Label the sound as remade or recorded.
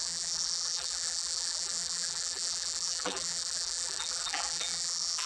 remade